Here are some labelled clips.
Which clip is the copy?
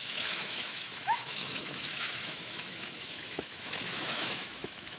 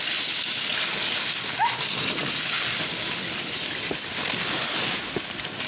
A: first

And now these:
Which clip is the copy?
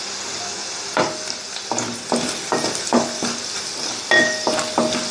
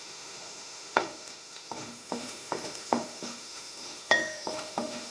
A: second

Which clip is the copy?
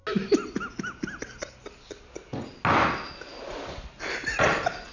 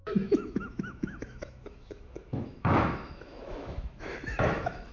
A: second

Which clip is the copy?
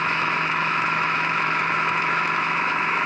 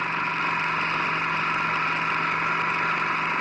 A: first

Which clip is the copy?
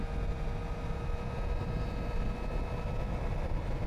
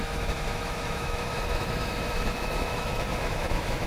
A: second